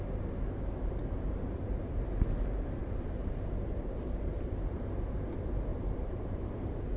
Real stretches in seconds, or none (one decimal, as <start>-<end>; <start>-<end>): 0.0-1.0; 1.6-2.8; 5.1-5.7; 6.4-7.0